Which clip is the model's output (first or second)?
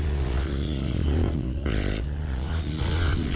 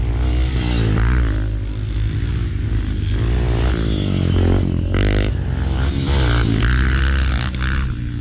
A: first